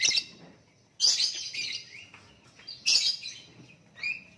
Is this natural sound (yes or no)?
yes